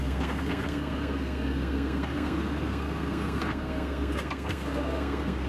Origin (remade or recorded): remade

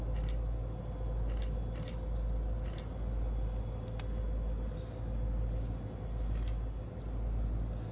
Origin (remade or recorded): recorded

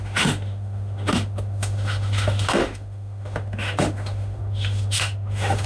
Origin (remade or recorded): remade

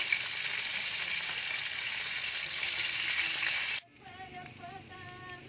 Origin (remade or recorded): recorded